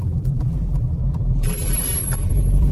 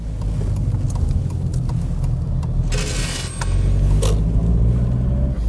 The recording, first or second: second